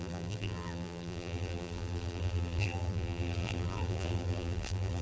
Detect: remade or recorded remade